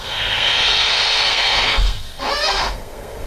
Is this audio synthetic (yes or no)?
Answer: yes